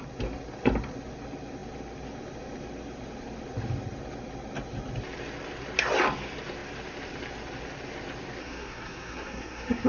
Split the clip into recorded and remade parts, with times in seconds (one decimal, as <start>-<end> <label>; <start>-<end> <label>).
0.0-8.4 recorded; 8.4-9.9 remade